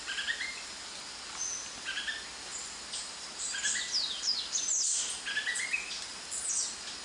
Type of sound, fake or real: real